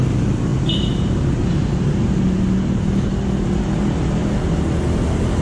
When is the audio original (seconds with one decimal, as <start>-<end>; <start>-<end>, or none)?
0.0-5.4